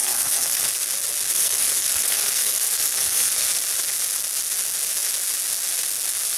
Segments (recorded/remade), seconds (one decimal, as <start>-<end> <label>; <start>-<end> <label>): 0.0-0.7 remade; 0.7-1.3 recorded; 1.3-3.6 remade; 3.6-6.4 recorded